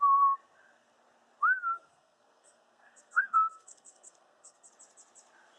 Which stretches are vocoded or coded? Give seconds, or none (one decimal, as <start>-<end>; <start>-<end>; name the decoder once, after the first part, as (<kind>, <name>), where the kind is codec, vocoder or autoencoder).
1.7-4.7 (codec, SNAC)